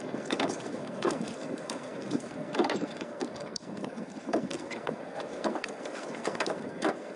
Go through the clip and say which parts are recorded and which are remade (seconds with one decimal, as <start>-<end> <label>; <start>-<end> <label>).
0.0-7.2 remade